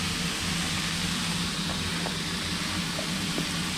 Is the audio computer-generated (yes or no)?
no